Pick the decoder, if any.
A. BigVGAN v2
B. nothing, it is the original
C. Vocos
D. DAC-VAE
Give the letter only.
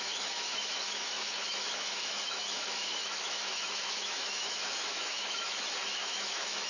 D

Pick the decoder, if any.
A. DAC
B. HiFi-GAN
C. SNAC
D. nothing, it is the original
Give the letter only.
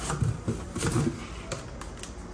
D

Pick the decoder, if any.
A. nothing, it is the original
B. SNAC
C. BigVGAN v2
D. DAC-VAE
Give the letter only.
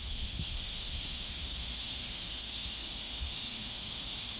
D